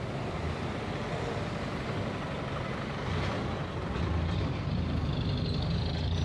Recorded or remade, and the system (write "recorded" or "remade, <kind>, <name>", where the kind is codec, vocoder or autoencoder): remade, vocoder, BigVGAN v2